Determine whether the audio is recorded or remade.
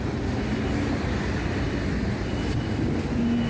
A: remade